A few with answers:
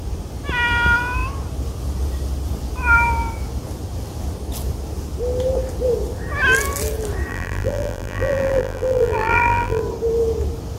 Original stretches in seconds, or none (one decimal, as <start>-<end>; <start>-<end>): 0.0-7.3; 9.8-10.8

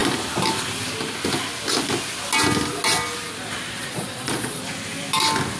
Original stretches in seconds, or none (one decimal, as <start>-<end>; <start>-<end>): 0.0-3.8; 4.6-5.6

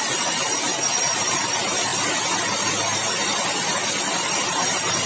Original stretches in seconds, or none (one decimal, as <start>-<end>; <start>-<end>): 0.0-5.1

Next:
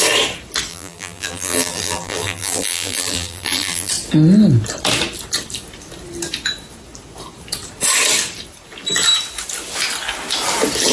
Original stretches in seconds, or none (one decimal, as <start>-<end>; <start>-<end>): 0.0-0.7; 3.9-10.9

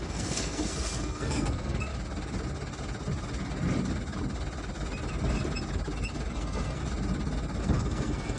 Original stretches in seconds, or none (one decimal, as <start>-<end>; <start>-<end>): 1.9-6.3; 6.8-7.6

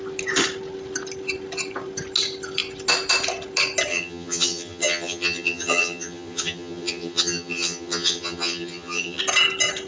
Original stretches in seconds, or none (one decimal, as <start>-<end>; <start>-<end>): 0.0-3.9; 9.2-9.9

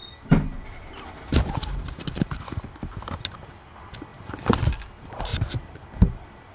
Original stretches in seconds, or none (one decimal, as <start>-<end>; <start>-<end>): 0.0-1.3; 2.5-4.1; 4.7-5.3; 5.8-6.5